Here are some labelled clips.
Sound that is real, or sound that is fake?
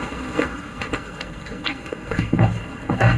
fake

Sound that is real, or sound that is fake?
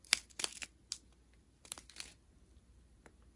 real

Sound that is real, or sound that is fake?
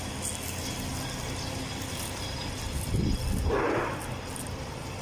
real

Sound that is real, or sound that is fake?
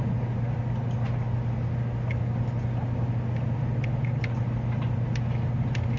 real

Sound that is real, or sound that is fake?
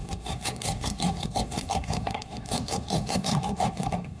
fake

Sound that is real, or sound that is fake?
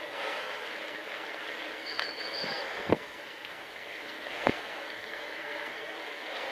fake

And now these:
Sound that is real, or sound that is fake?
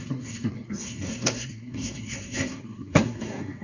fake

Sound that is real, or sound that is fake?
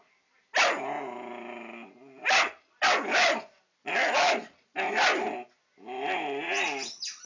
real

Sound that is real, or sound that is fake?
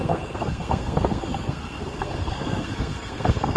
fake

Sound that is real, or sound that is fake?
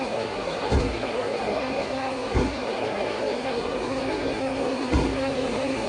fake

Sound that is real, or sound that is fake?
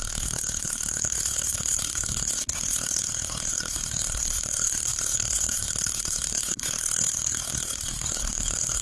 fake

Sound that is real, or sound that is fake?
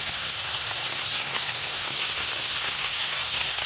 fake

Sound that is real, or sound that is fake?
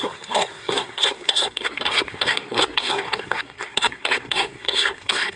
fake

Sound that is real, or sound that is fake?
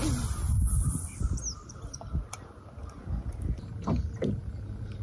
real